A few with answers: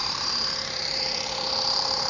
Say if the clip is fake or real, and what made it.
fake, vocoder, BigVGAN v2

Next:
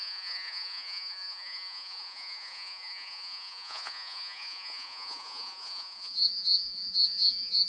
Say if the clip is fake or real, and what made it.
fake, vocoder, Vocos